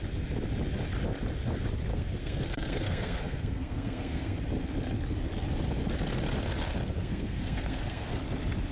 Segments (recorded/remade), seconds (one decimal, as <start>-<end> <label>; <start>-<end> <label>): 0.0-1.9 recorded; 1.9-4.4 remade; 4.4-7.0 recorded; 7.0-8.1 remade; 8.1-8.7 recorded